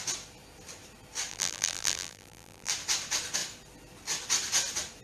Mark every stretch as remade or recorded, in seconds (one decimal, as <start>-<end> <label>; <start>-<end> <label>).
0.0-1.3 recorded; 1.3-2.7 remade; 2.7-5.0 recorded